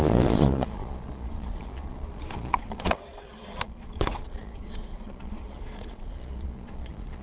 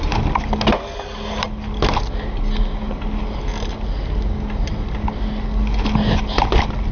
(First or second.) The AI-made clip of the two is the first